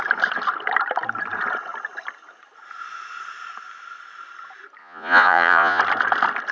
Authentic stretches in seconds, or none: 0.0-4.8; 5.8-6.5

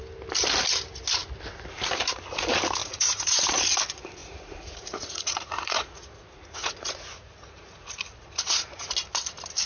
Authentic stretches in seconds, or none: 0.0-2.8; 3.4-4.2; 8.9-9.7

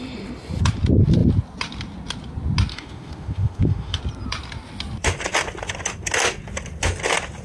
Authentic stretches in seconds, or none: 0.0-2.7; 4.0-7.4

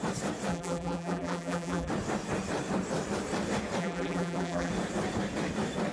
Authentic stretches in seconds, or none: 0.0-0.5; 1.9-3.8; 4.7-5.9